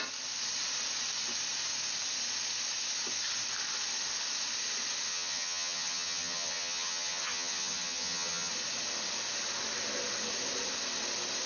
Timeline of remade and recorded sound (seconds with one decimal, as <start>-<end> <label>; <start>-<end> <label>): 0.0-5.1 recorded; 5.1-8.5 remade; 8.5-11.5 recorded